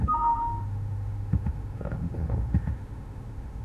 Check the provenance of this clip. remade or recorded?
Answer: remade